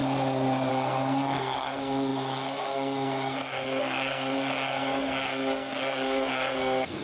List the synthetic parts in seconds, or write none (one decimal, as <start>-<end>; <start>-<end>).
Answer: 0.7-7.0